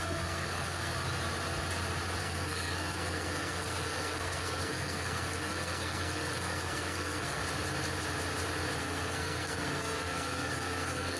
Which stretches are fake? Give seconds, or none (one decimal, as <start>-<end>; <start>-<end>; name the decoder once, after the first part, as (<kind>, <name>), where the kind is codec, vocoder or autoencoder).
0.0-0.9 (codec, SNAC); 2.2-7.4; 8.8-11.2